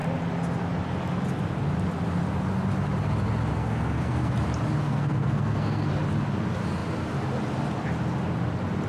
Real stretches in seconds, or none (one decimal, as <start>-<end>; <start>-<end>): 0.0-3.5; 4.3-4.8; 5.9-8.9